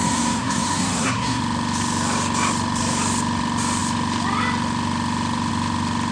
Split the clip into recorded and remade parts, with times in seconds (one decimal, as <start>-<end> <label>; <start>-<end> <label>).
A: 0.0-1.4 remade; 1.4-6.1 recorded